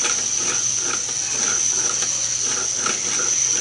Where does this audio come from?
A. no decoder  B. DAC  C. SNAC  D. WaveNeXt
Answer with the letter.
A